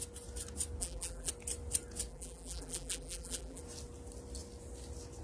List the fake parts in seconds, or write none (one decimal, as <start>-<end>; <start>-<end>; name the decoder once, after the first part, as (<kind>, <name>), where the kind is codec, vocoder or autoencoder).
0.8-1.3 (vocoder, BigVGAN v2); 2.1-3.6